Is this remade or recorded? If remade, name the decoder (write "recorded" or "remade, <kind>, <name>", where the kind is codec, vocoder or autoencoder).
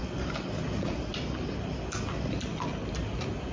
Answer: recorded